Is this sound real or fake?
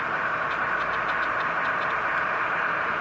real